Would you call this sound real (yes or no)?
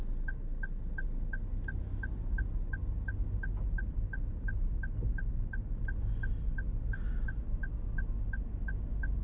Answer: yes